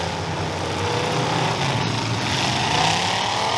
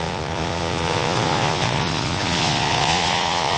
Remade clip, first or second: second